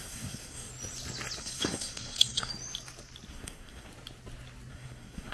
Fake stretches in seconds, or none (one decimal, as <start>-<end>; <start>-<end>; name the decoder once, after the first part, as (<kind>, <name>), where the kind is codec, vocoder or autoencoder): 0.0-0.7 (codec, SNAC); 1.4-2.5; 3.3-3.9; 4.7-5.3